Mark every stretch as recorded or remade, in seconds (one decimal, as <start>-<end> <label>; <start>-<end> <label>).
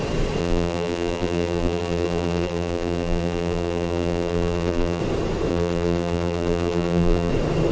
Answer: 0.0-0.4 recorded; 0.4-5.0 remade; 5.0-5.5 recorded; 5.5-7.3 remade; 7.3-7.7 recorded